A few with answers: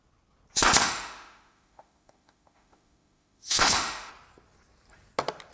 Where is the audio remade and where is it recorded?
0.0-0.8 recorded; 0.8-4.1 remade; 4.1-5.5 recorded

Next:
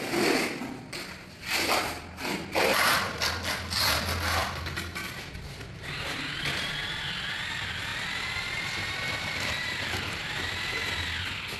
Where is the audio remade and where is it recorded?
0.0-11.6 recorded

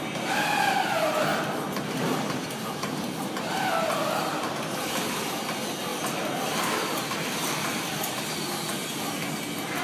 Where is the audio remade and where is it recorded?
0.0-5.9 recorded; 5.9-8.2 remade; 8.2-9.8 recorded

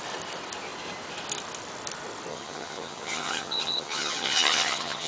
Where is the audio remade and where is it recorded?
0.0-2.3 recorded; 2.3-5.1 remade

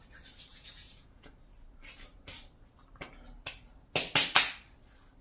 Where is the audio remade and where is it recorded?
0.0-0.5 recorded; 0.5-1.3 remade; 1.3-5.2 recorded

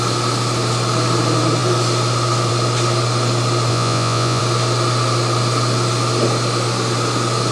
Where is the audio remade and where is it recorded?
0.0-3.7 recorded; 3.7-4.4 remade; 4.4-7.5 recorded

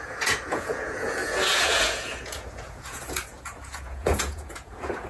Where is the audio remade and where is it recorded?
0.0-5.1 remade

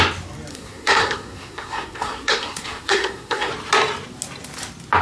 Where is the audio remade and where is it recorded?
0.0-0.5 recorded; 0.5-3.5 remade; 3.5-5.0 recorded